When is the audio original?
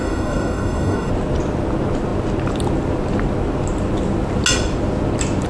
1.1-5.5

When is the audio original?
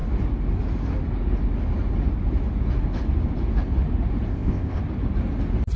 0.0-4.3; 4.8-5.8